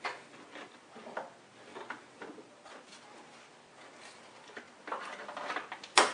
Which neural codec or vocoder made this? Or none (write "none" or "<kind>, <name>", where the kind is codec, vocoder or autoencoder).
none